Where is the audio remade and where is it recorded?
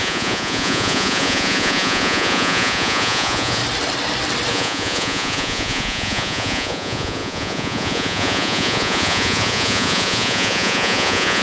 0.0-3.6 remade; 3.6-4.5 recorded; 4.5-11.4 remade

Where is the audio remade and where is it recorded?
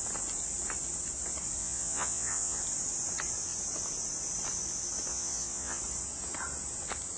0.0-1.6 recorded; 1.6-2.6 remade; 2.6-5.1 recorded; 5.1-5.8 remade; 5.8-7.2 recorded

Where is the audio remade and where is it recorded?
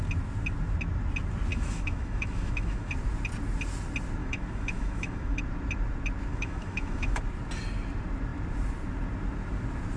0.0-1.5 recorded; 1.5-2.9 remade; 2.9-4.2 recorded; 4.2-5.4 remade; 5.4-6.3 recorded; 6.3-7.2 remade; 7.2-10.0 recorded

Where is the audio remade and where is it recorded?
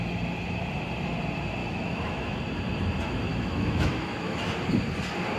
0.0-1.6 recorded; 1.6-2.4 remade; 2.4-3.3 recorded; 3.3-4.5 remade; 4.5-5.4 recorded